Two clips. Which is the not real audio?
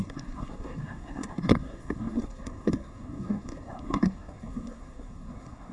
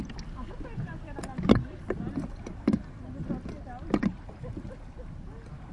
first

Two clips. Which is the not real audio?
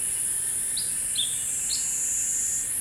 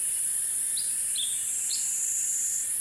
second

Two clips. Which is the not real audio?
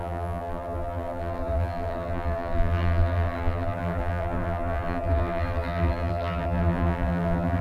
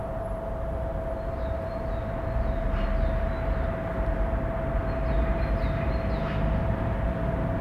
first